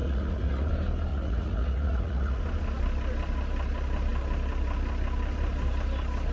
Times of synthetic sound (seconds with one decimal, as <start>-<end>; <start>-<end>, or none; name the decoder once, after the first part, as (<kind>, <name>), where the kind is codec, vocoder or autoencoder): 0.0-0.7 (vocoder, Vocos); 1.1-2.4